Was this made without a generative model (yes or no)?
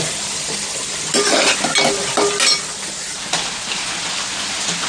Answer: yes